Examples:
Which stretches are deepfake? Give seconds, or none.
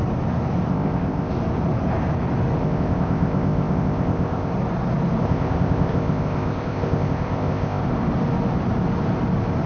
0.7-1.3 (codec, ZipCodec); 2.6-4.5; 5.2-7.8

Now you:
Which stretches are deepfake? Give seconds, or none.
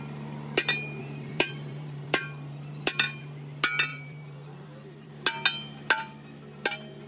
1.0-3.2 (vocoder, BigVGAN v2); 3.9-5.1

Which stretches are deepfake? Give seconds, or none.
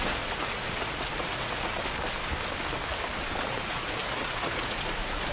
0.0-1.8 (vocoder, Vocos); 3.4-5.3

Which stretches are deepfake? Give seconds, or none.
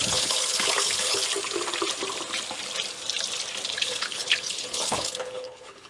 0.0-1.2 (codec, HILCodec); 3.7-5.9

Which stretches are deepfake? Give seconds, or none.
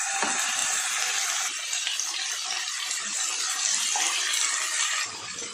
none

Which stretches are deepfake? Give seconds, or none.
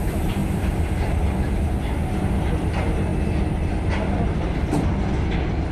none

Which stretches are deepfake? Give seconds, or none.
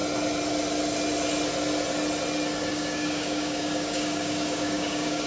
2.7-5.3 (codec, DAC)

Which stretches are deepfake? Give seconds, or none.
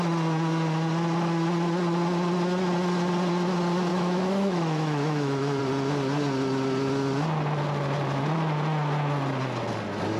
3.9-5.6 (autoencoder, DAC-VAE)